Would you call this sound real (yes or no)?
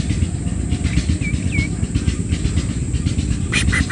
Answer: yes